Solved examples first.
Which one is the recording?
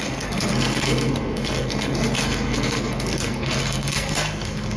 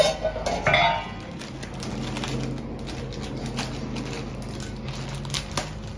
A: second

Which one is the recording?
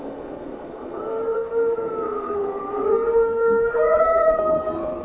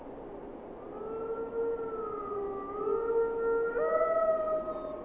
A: second